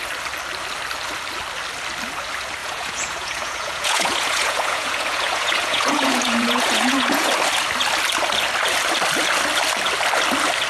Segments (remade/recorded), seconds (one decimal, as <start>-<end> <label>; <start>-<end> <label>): 0.0-2.6 recorded; 2.6-7.3 remade; 7.3-10.7 recorded